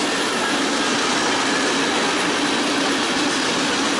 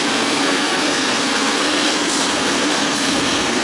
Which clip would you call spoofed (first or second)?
second